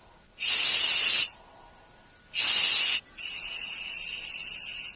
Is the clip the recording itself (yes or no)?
yes